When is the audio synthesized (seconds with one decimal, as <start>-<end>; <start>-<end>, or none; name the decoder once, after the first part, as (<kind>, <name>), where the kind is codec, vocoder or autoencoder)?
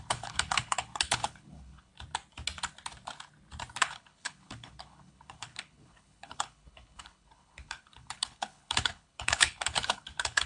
0.0-1.9 (codec, HILCodec); 3.8-10.5